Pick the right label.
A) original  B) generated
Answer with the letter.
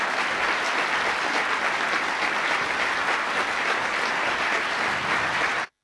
A